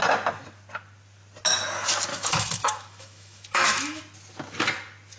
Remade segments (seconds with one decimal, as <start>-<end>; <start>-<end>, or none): 2.1-4.0